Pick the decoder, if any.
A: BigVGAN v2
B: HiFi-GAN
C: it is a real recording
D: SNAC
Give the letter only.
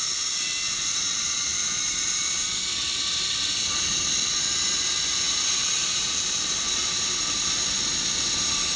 C